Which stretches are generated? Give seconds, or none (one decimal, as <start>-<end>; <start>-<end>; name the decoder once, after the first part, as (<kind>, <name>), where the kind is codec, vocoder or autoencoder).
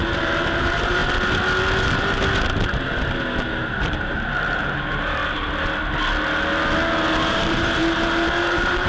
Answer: 0.0-1.0 (vocoder, BigVGAN v2); 1.8-2.2; 3.9-5.2; 7.3-8.9